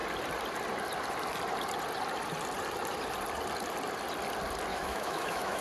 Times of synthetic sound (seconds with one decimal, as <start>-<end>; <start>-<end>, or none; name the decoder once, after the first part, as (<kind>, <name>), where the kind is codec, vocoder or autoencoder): 4.7-5.6 (autoencoder, DAC-VAE)